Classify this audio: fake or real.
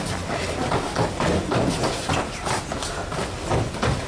real